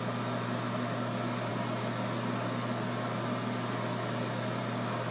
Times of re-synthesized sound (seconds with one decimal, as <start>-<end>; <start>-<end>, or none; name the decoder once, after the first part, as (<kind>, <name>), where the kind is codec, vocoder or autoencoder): none